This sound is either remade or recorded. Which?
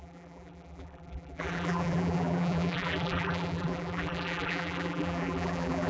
remade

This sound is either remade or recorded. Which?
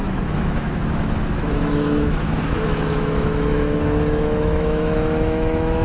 remade